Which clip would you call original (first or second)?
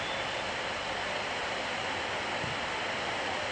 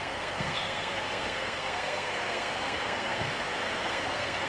first